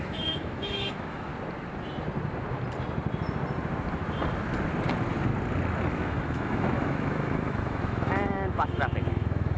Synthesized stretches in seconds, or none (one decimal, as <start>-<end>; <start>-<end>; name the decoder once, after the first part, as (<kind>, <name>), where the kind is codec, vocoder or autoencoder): 0.0-1.3 (autoencoder, DAC-VAE); 5.9-9.6